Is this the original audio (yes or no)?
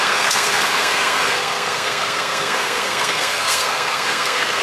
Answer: no